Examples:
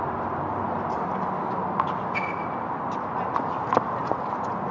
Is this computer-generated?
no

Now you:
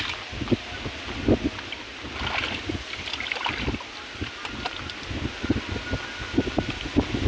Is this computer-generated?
no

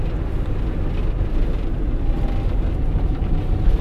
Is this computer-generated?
no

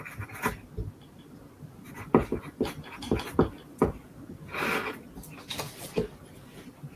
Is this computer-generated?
no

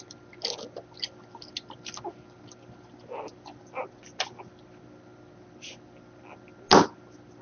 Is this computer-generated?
no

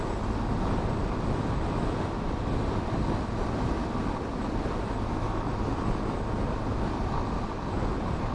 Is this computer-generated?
no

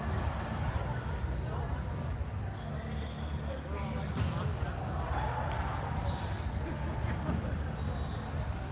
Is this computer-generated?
no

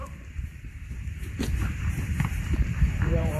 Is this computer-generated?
yes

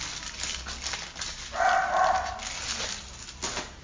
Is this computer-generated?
no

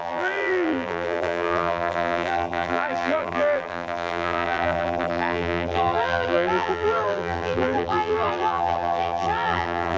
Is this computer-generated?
yes